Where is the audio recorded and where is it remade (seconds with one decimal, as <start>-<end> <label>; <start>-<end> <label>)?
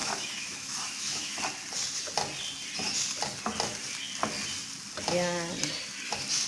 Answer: 0.0-1.4 remade; 1.4-6.5 recorded